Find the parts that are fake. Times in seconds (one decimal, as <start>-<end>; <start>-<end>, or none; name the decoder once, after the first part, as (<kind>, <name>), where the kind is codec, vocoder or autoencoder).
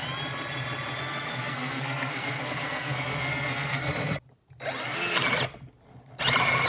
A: 1.0-3.8 (codec, SNAC)